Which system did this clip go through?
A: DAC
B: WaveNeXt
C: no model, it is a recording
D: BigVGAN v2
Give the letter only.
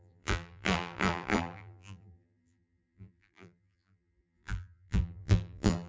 D